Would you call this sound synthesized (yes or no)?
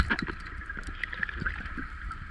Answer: yes